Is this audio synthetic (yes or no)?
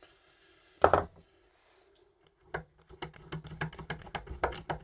no